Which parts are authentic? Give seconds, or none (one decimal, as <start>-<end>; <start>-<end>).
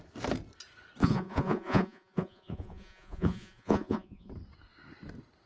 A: 0.0-1.0; 4.3-5.5